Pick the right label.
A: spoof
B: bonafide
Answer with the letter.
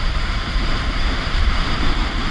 A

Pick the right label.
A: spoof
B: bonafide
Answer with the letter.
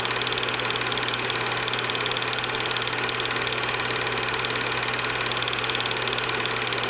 B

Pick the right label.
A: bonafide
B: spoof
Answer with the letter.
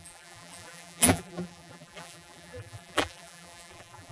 B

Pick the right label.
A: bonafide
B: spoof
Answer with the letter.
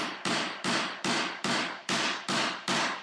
B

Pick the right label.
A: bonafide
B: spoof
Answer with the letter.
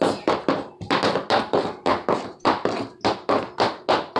A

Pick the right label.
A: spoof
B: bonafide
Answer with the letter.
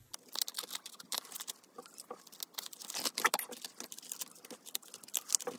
B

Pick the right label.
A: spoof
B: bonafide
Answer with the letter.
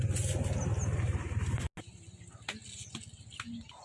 B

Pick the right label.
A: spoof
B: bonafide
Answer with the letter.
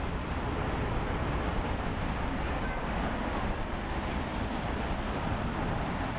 A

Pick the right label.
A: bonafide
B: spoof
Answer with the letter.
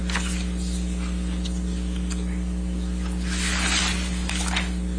A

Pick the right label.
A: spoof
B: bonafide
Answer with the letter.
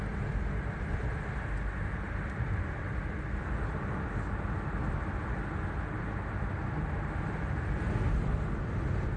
B